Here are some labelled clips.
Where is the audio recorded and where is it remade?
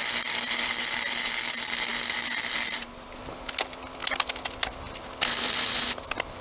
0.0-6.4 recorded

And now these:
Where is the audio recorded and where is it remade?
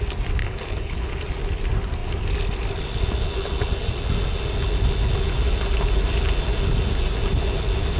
0.0-0.4 recorded; 0.4-1.1 remade; 1.1-8.0 recorded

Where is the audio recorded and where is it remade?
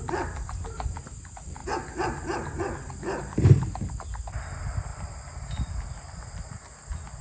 0.0-7.2 recorded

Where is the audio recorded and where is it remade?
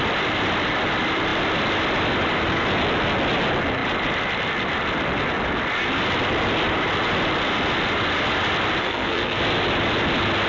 0.0-8.8 recorded; 8.8-9.4 remade; 9.4-10.5 recorded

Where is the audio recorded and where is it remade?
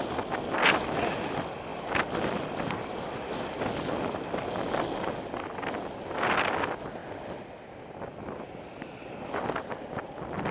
0.0-10.5 recorded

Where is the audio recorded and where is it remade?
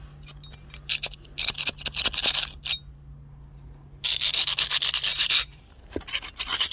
0.0-5.1 recorded; 5.1-5.8 remade; 5.8-6.7 recorded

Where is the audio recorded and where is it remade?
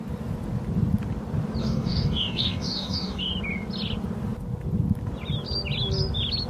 0.0-1.6 recorded; 1.6-3.3 remade; 3.3-6.5 recorded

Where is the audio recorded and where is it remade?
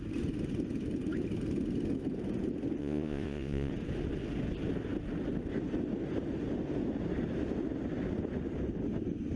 0.0-2.8 recorded; 2.8-3.7 remade; 3.7-9.4 recorded